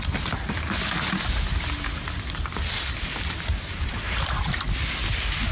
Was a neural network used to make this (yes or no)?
no